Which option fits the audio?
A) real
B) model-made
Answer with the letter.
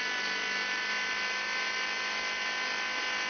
A